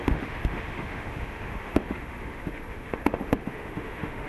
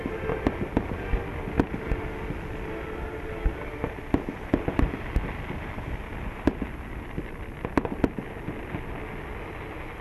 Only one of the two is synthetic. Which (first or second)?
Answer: first